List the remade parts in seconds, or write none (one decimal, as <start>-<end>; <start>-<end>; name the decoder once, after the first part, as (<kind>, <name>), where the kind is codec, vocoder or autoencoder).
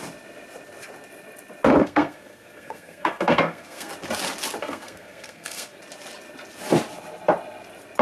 1.8-3.9 (codec, SNAC); 4.6-5.8